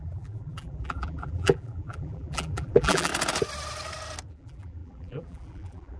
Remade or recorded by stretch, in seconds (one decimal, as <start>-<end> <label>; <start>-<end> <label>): 0.0-3.1 remade; 3.1-4.3 recorded; 4.3-6.0 remade